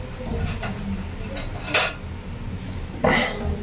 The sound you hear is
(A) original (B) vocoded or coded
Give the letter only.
A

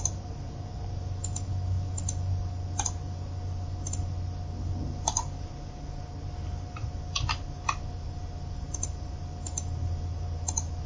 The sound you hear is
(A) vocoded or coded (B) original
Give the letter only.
B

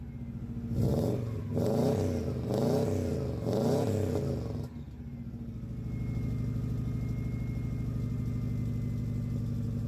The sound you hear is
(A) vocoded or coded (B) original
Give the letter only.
B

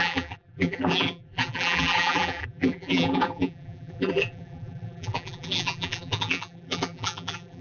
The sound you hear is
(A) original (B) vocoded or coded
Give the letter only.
B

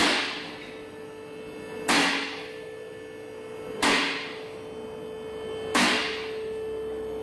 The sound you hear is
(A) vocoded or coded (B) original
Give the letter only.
B